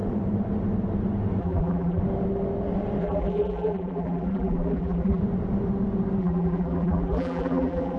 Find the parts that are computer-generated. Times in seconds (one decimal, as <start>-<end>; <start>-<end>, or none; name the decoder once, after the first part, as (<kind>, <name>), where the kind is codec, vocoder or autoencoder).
1.4-2.0 (vocoder, BigVGAN v2); 3.0-5.2; 6.2-8.0